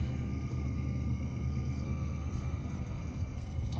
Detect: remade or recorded remade